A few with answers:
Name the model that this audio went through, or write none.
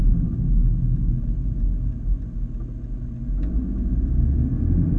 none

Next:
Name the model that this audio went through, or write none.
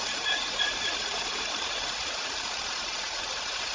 vocoder, Vocos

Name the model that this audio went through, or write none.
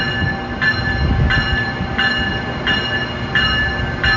none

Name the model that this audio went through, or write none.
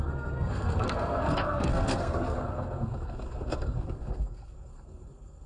codec, SNAC